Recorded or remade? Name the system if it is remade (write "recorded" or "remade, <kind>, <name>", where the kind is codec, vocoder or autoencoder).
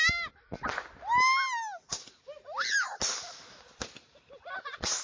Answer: recorded